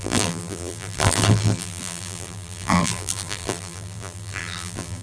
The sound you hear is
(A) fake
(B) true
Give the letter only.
A